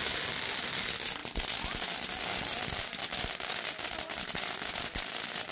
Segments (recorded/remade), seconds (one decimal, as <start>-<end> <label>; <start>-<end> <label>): 0.0-5.5 recorded